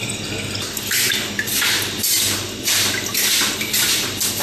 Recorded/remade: recorded